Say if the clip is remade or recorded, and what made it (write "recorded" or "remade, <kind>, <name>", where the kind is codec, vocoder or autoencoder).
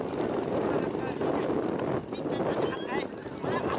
recorded